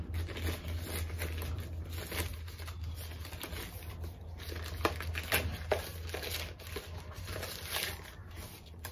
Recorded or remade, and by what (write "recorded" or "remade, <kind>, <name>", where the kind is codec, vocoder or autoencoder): recorded